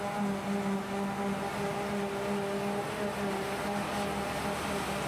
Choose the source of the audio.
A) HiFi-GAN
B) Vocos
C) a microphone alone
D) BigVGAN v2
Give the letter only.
C